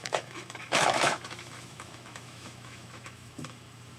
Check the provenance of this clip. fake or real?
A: fake